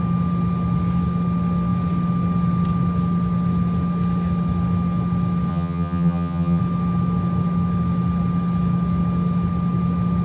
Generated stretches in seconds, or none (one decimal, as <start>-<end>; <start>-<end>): 5.5-6.6